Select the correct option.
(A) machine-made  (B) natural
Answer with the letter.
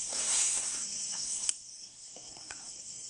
A